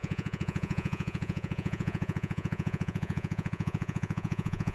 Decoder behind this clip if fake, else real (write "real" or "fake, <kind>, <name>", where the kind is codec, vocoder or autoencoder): fake, vocoder, Vocos